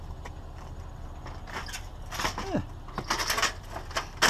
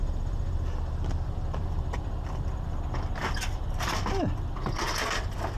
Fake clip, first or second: second